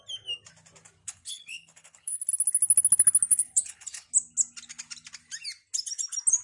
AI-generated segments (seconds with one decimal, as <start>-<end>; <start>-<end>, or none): 1.0-2.3; 3.3-4.1